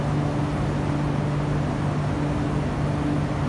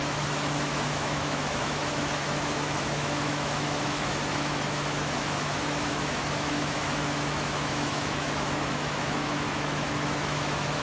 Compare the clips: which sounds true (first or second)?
first